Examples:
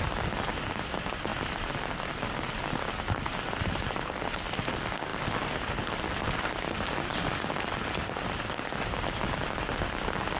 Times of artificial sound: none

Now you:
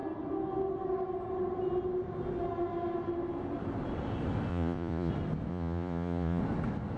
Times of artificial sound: 4.5-5.1 (vocoder, Vocos); 5.5-6.4

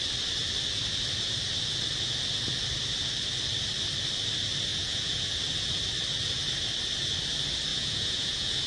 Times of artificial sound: 4.7-5.4 (vocoder, Vocos); 7.7-8.7

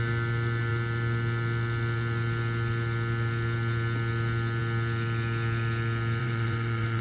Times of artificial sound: 6.2-7.0 (vocoder, Vocos)

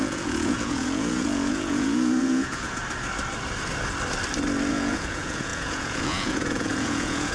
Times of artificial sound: 0.0-2.8 (vocoder, Vocos); 4.7-7.3

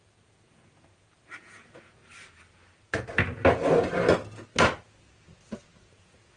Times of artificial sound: 0.0-2.0 (vocoder, Vocos); 5.8-6.4

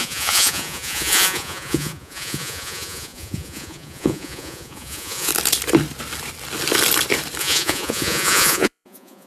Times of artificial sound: 0.0-5.3 (vocoder, Vocos); 7.4-9.3